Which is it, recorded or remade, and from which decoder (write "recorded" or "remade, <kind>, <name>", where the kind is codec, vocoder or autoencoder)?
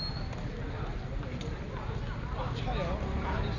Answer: recorded